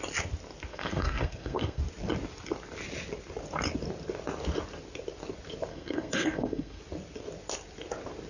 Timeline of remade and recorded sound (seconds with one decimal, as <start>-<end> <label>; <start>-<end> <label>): 0.0-0.7 recorded; 0.7-1.8 remade; 1.8-5.7 recorded; 5.7-6.8 remade; 6.8-8.3 recorded